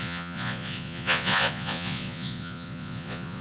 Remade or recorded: remade